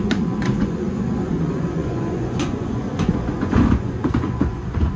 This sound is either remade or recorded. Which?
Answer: remade